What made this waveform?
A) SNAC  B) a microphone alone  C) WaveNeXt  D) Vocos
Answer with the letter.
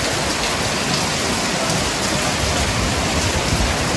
B